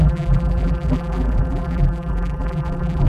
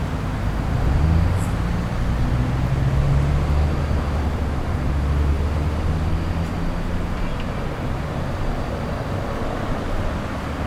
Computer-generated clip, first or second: first